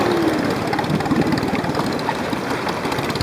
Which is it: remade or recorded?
recorded